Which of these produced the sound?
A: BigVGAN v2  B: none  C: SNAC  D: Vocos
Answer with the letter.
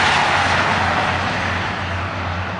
B